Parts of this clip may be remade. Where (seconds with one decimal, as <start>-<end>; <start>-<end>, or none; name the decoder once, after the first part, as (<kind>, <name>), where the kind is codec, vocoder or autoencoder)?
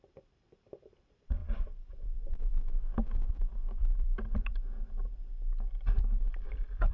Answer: 0.0-4.5 (vocoder, BigVGAN v2); 6.5-6.9